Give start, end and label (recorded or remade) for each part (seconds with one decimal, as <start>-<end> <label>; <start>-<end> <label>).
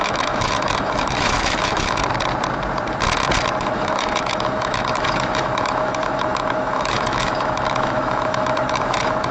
0.0-2.0 remade; 2.0-3.6 recorded; 3.6-9.3 remade